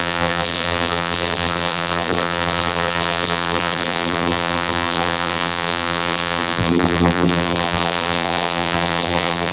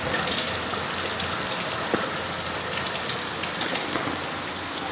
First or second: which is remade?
first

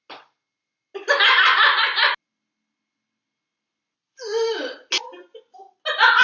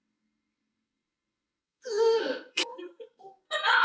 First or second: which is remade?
second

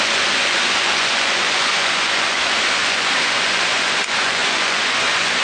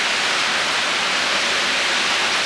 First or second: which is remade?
first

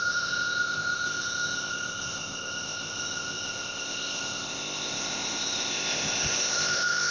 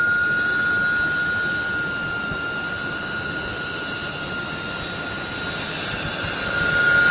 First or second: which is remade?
first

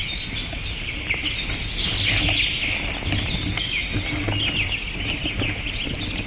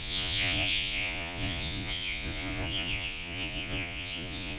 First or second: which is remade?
second